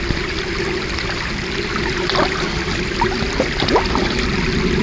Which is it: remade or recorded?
recorded